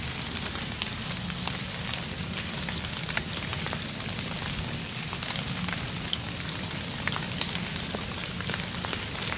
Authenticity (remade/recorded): recorded